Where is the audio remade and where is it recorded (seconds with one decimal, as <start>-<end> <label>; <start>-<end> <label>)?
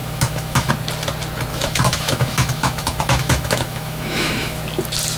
0.0-0.7 remade; 0.7-1.5 recorded; 1.5-4.6 remade; 4.6-5.2 recorded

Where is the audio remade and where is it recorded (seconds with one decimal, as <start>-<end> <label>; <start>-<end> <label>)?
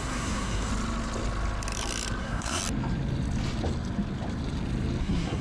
0.0-0.7 remade; 0.7-2.2 recorded; 2.2-2.6 remade; 2.6-5.0 recorded; 5.0-5.4 remade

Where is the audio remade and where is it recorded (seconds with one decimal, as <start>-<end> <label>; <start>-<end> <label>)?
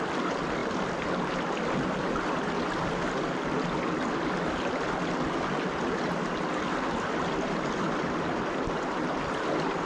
0.0-9.9 recorded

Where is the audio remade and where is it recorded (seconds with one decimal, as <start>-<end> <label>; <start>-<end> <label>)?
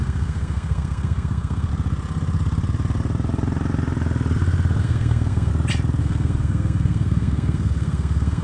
0.0-1.7 remade; 1.7-4.8 recorded; 4.8-5.5 remade; 5.5-6.0 recorded; 6.0-8.4 remade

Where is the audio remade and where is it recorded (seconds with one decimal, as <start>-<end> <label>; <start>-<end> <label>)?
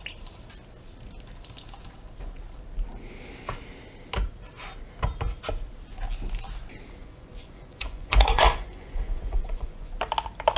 0.0-7.0 recorded; 7.0-9.9 remade; 9.9-10.6 recorded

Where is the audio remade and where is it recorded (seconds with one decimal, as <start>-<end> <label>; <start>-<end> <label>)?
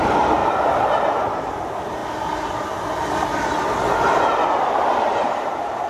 0.0-0.4 remade; 0.4-1.5 recorded; 1.5-2.0 remade; 2.0-5.5 recorded; 5.5-5.9 remade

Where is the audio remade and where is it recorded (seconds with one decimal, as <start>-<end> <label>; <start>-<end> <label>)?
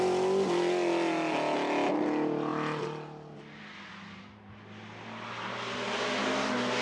0.0-6.8 recorded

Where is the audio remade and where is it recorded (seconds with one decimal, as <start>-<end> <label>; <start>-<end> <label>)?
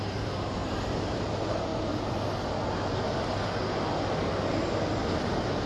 0.0-1.7 remade; 1.7-5.1 recorded; 5.1-5.7 remade